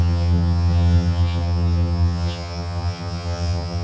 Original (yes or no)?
no